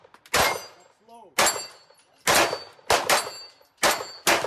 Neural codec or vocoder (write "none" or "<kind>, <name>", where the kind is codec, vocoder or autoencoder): none